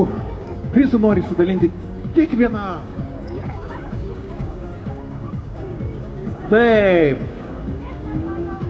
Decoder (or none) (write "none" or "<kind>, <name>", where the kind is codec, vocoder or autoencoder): codec, DAC